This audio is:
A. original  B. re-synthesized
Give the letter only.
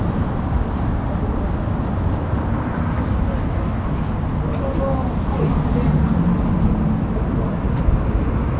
A